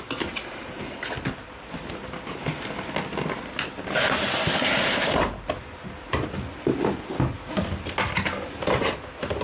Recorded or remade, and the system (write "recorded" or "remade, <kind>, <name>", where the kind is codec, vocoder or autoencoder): recorded